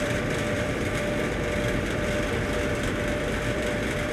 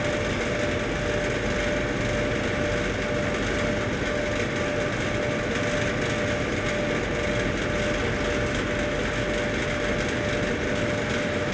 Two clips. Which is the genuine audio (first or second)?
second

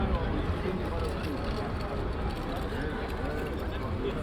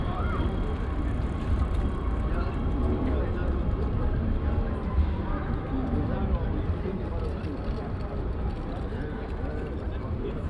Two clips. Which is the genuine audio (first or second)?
first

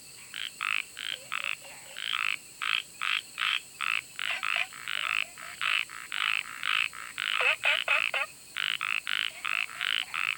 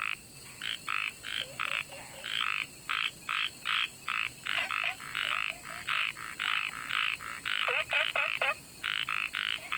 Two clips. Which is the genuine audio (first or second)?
second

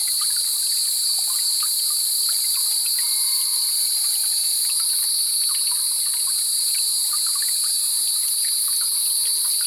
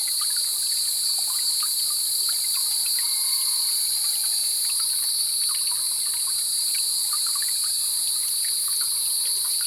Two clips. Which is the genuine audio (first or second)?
first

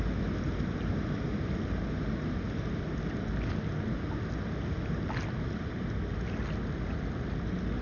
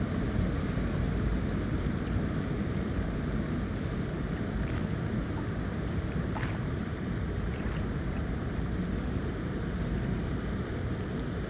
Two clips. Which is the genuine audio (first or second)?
first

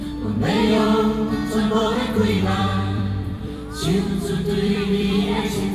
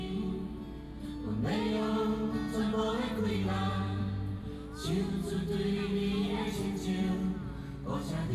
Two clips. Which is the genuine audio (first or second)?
second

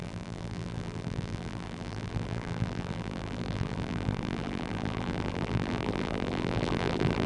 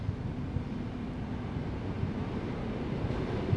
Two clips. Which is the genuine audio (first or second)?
second